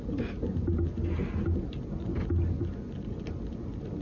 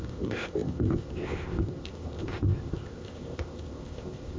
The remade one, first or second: second